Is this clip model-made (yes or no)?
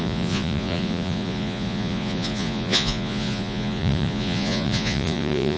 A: yes